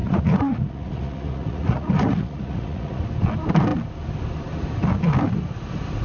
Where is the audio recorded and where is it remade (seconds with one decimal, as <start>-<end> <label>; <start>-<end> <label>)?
0.0-3.0 remade; 3.0-6.0 recorded